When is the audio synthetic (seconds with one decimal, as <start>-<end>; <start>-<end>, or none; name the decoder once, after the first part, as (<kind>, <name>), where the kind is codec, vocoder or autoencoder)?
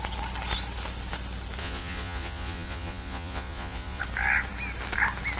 1.6-4.0 (vocoder, Vocos)